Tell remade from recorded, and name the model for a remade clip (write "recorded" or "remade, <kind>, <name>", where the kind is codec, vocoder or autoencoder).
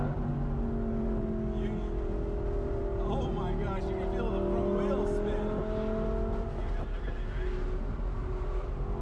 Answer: recorded